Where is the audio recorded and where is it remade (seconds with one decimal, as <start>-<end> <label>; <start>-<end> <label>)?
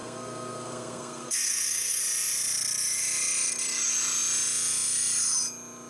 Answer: 0.0-2.0 remade; 2.0-5.9 recorded